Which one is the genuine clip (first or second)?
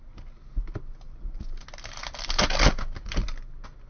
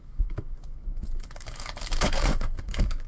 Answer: first